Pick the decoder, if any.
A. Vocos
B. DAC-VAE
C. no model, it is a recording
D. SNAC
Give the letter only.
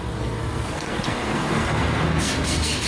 D